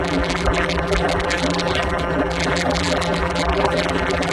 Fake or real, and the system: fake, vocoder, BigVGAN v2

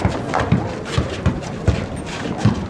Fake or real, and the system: real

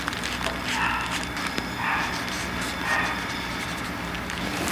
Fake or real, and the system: real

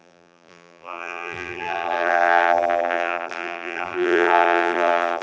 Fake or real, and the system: fake, vocoder, BigVGAN v2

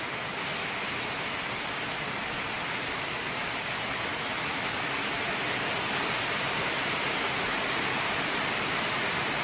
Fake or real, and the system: real